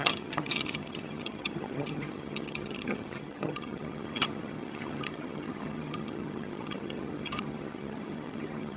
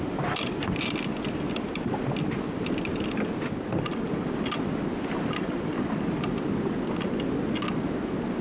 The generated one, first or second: first